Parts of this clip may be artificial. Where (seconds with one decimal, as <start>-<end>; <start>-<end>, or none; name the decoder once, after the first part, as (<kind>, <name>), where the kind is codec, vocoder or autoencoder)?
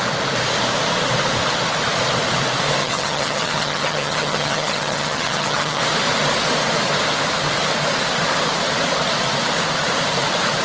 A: 2.8-5.8 (vocoder, HiFi-GAN)